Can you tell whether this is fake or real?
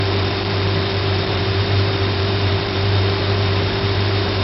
fake